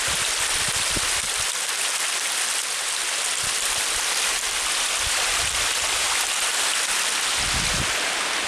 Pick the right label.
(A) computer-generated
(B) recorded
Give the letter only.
B